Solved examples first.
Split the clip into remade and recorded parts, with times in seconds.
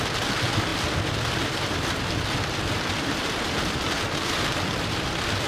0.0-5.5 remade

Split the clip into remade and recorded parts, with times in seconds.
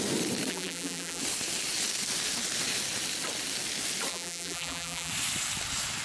0.0-0.5 recorded; 0.5-1.2 remade; 1.2-4.1 recorded; 4.1-5.1 remade; 5.1-6.0 recorded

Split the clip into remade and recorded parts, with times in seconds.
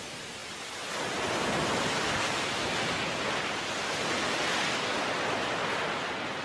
0.0-6.4 recorded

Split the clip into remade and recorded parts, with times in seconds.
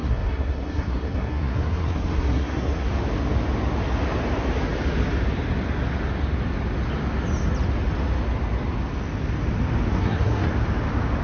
0.0-2.9 remade; 2.9-9.9 recorded; 9.9-10.5 remade; 10.5-11.2 recorded